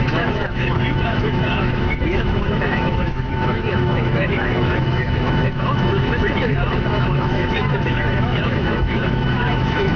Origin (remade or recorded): remade